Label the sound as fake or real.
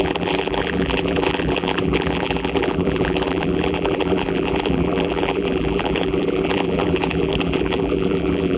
fake